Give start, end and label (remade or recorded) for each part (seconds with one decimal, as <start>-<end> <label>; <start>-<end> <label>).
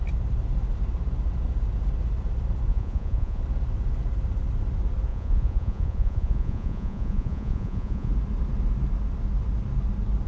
0.0-2.7 recorded; 2.7-3.4 remade; 3.4-5.1 recorded; 5.1-8.1 remade; 8.1-10.3 recorded